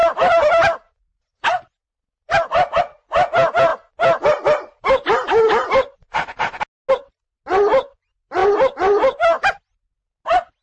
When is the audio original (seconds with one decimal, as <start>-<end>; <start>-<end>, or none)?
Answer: 0.0-10.6